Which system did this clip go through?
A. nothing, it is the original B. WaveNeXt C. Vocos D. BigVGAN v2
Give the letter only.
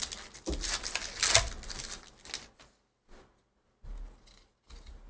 A